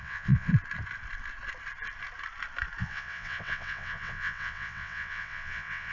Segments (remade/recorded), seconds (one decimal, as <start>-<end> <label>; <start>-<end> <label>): 0.0-0.5 remade; 0.5-2.8 recorded; 2.8-5.9 remade